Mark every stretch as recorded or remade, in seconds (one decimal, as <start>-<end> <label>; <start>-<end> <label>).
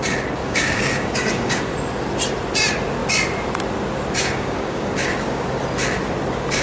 0.0-0.4 recorded; 0.4-1.6 remade; 1.6-4.2 recorded; 4.2-5.6 remade; 5.6-6.6 recorded